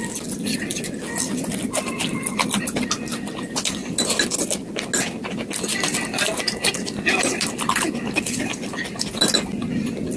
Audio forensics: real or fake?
real